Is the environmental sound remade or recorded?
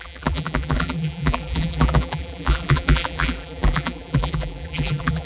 remade